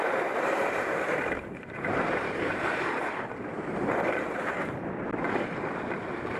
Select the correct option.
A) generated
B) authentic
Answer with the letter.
A